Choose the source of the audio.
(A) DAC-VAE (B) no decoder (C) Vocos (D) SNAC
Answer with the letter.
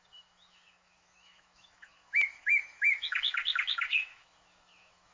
A